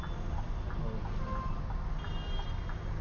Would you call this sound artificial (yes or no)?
no